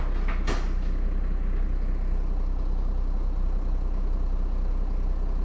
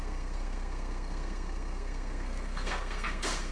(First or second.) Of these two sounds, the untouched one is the first